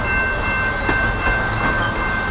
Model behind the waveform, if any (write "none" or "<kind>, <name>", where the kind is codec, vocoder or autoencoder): none